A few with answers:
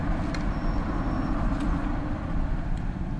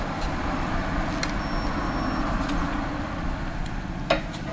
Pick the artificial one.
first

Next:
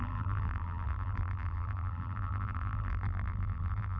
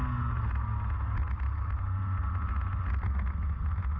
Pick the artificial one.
first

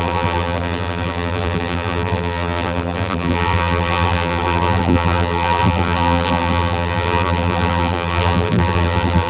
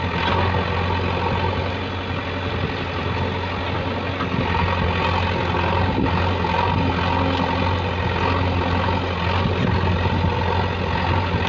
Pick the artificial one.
first